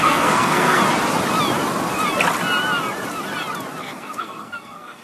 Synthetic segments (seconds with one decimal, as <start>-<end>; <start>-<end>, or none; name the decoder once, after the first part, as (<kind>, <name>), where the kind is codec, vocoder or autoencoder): 0.0-0.8 (codec, SNAC); 3.8-5.0